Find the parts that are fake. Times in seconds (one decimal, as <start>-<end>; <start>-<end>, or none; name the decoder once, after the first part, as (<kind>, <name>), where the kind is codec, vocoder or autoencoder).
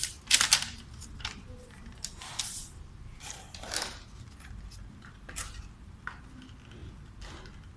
none